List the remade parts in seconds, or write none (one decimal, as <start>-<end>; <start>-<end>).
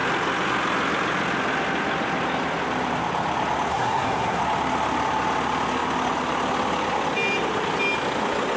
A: 3.7-4.4